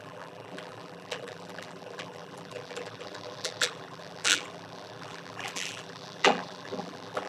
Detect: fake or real fake